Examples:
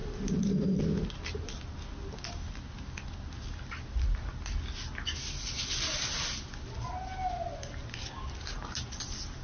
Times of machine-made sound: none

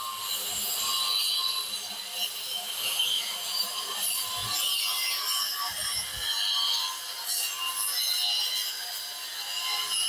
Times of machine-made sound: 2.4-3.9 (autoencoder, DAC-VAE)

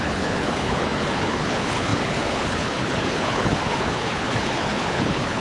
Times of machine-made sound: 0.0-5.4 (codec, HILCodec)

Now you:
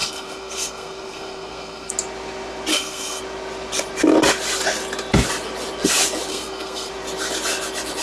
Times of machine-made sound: 0.0-1.9 (codec, SNAC); 2.7-3.2; 6.3-6.9

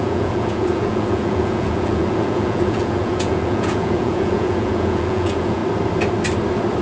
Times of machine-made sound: 0.0-5.6 (vocoder, Vocos)

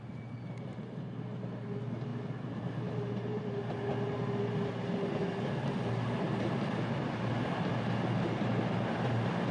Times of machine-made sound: none

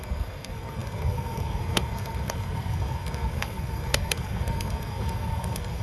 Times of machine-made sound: 0.0-5.8 (codec, SNAC)